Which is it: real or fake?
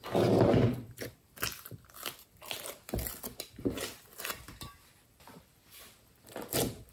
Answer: real